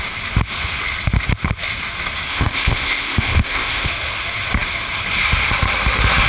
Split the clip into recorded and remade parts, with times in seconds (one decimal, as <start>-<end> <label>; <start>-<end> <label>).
0.0-2.3 recorded; 2.3-3.9 remade; 3.9-6.3 recorded